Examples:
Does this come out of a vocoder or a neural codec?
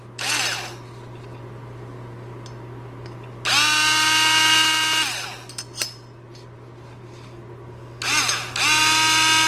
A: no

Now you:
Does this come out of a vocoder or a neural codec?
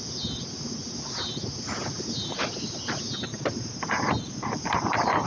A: no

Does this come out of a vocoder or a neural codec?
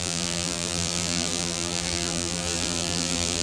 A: yes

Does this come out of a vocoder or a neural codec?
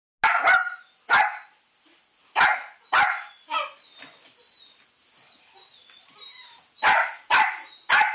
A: no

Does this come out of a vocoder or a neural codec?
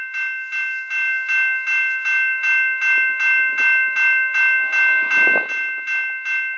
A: no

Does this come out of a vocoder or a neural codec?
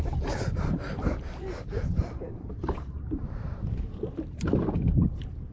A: yes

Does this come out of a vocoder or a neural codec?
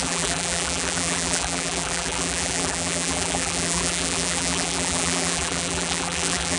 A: yes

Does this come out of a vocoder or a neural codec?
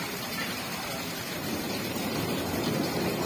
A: yes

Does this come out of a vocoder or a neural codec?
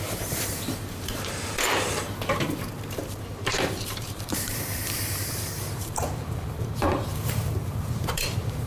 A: yes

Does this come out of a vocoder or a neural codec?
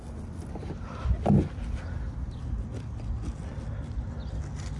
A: no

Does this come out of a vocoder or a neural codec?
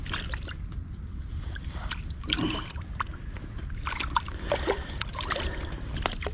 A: yes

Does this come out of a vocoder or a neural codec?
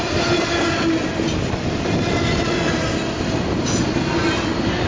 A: no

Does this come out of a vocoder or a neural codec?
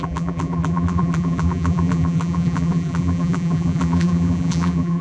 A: yes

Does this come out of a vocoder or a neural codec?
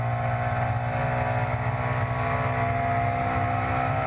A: no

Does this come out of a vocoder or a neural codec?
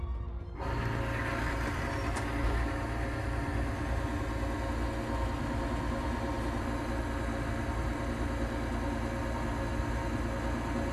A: no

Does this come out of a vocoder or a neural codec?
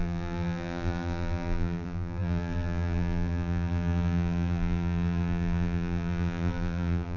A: yes